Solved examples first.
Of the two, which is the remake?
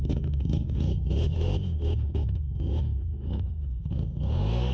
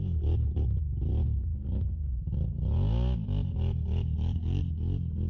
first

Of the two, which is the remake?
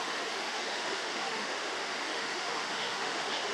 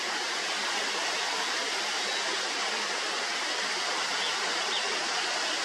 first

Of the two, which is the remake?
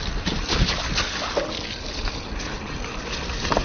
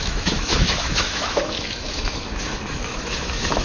second